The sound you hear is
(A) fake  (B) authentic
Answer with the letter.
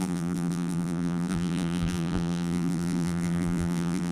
A